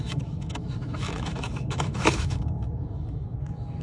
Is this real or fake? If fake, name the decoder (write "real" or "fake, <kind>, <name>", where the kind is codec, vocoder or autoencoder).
fake, autoencoder, DAC-VAE